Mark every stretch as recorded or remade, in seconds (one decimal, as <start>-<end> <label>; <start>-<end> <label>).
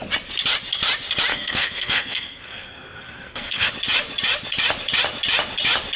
0.0-1.3 recorded; 1.3-3.7 remade; 3.7-6.0 recorded